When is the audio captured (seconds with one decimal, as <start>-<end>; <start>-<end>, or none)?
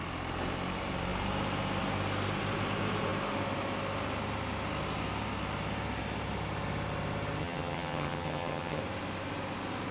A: 0.0-7.4; 8.8-9.9